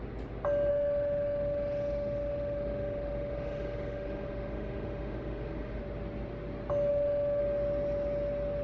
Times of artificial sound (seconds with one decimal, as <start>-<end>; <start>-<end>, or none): 0.7-5.8; 6.9-7.4